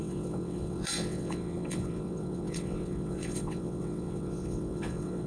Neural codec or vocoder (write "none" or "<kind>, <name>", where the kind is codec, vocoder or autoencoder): vocoder, WaveNeXt